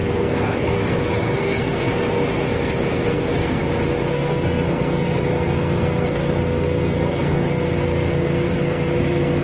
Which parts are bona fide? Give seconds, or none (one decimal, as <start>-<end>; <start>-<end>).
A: 3.6-4.1